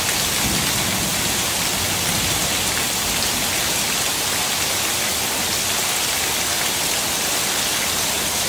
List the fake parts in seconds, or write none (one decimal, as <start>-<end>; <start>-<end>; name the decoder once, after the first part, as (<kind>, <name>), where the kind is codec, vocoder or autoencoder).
1.1-1.6 (vocoder, BigVGAN v2)